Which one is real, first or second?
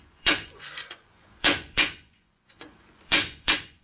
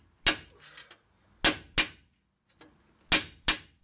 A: second